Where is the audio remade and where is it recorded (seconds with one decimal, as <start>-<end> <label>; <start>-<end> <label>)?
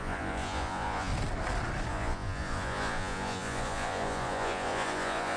0.0-1.1 remade; 1.1-1.9 recorded; 1.9-5.4 remade